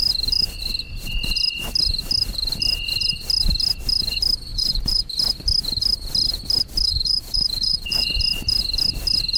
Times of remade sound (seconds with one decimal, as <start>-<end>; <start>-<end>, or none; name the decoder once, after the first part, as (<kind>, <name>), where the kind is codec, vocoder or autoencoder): 4.5-5.1 (vocoder, Vocos); 6.9-8.1